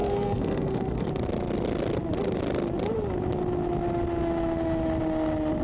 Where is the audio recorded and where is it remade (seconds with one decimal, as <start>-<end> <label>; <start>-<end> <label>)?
0.0-1.1 remade; 1.1-5.6 recorded